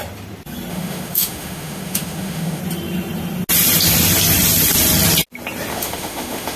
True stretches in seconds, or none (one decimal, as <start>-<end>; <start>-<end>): 0.0-0.7; 2.6-5.7